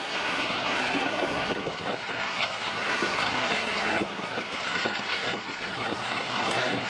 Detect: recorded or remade remade